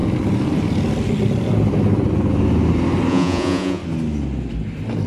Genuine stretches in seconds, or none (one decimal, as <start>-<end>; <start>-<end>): 0.0-3.1; 3.8-5.1